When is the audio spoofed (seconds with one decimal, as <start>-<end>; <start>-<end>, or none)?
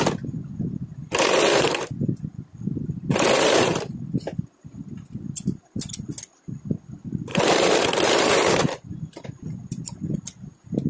none